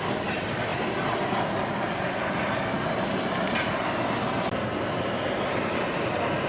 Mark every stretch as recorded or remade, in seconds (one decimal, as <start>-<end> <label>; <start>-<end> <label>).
0.0-6.5 recorded